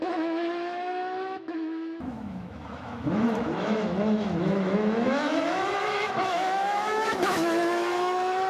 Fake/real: fake